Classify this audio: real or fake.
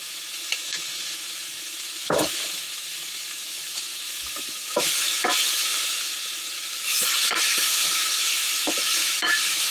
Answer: fake